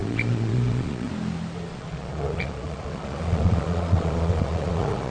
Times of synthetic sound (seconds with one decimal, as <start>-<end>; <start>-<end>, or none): 0.0-1.1; 1.7-5.1